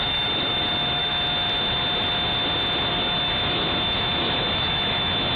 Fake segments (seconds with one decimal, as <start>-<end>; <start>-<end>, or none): 0.0-1.1; 2.9-5.4